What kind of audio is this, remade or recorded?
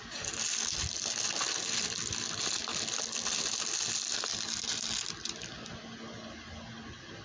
recorded